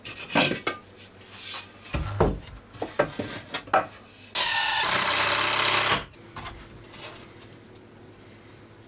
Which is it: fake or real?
real